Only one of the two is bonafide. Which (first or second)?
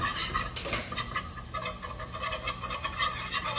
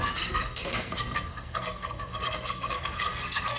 first